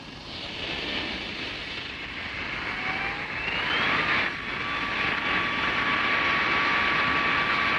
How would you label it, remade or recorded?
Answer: recorded